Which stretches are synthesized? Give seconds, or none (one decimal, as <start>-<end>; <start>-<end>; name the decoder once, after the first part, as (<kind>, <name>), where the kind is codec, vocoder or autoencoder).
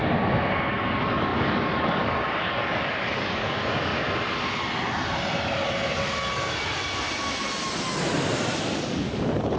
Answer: 0.7-3.9 (codec, DAC); 8.6-9.6